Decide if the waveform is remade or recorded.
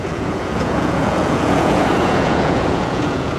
remade